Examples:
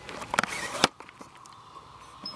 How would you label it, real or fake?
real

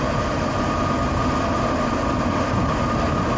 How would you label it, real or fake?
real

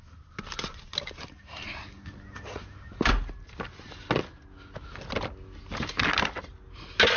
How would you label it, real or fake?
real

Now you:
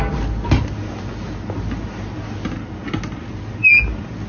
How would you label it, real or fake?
real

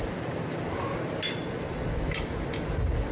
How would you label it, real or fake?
real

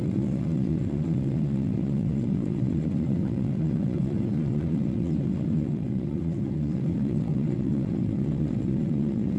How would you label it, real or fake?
fake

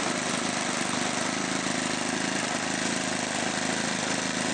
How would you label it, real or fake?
real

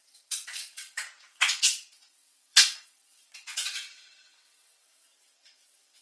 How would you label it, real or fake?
fake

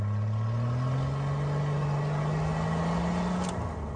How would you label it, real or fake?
real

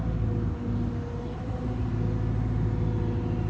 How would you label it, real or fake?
real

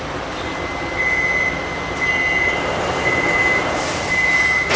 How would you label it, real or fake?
real